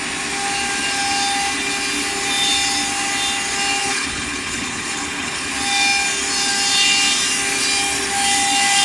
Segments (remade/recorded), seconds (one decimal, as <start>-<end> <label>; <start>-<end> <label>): 0.0-3.8 recorded; 3.8-5.5 remade; 5.5-8.8 recorded